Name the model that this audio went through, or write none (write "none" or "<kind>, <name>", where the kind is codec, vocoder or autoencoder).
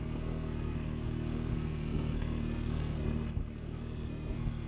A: codec, SNAC